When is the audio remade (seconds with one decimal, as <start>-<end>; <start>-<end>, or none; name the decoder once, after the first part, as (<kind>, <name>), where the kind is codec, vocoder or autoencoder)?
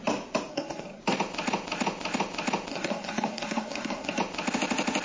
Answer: 0.5-1.0 (codec, SNAC); 2.7-4.2